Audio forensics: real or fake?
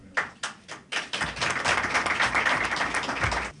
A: real